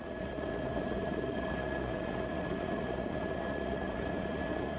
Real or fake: fake